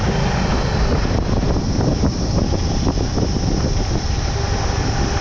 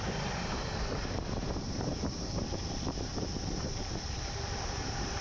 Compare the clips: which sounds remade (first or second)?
second